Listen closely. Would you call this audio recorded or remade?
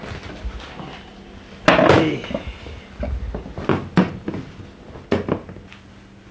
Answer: recorded